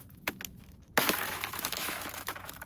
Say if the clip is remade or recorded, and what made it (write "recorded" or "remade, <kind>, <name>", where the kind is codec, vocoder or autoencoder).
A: remade, autoencoder, DAC-VAE